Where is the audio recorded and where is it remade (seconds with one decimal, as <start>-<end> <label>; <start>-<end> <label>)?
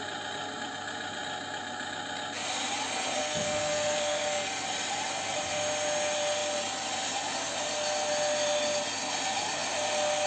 0.0-3.2 recorded; 3.2-4.5 remade; 4.5-10.3 recorded